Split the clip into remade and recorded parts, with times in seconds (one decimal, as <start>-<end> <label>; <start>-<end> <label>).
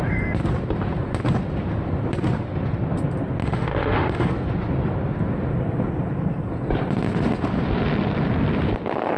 0.0-3.4 recorded; 3.4-4.3 remade; 4.3-9.2 recorded